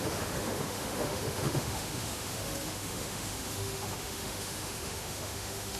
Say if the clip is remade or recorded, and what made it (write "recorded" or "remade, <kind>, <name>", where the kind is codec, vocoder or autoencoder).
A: remade, autoencoder, DAC-VAE